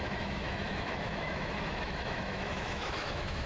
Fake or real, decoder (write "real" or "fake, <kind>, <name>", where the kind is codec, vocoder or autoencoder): fake, autoencoder, DAC-VAE